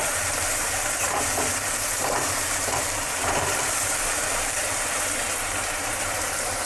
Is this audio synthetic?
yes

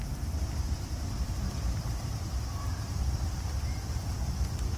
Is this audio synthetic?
yes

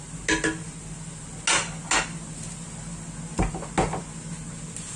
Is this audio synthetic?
no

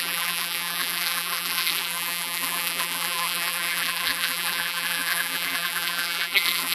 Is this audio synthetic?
yes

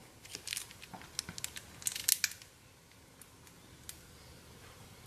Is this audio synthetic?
no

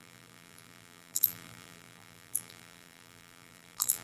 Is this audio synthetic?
yes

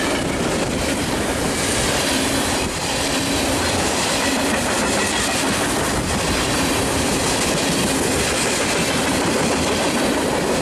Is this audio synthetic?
yes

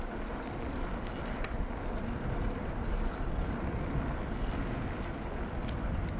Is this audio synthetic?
yes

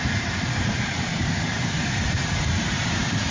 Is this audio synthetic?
yes